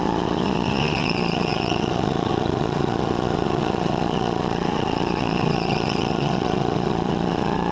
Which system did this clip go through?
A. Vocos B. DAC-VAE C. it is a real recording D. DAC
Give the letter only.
A